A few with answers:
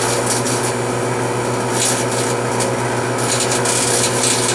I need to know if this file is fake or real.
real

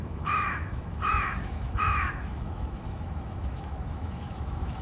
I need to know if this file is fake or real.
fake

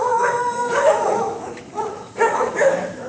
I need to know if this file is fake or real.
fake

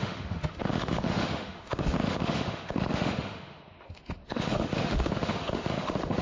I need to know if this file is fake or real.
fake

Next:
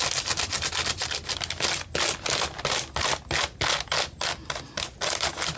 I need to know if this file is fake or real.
real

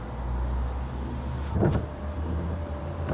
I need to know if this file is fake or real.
real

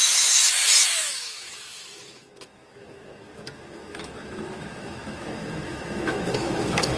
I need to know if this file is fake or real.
fake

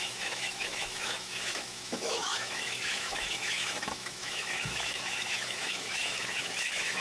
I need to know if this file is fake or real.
fake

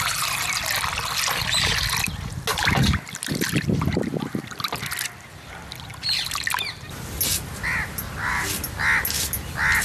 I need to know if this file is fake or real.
real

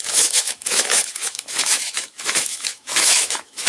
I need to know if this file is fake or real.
fake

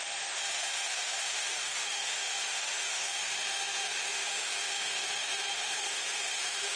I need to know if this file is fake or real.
fake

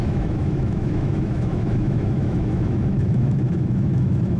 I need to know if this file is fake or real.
fake